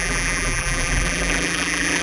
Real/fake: fake